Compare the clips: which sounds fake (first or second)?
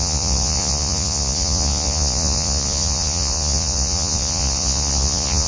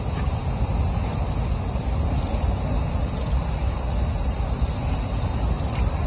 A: first